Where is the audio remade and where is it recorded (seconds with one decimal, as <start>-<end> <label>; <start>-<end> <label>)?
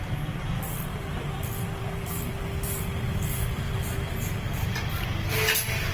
0.0-0.9 recorded; 0.9-4.4 remade; 4.4-5.9 recorded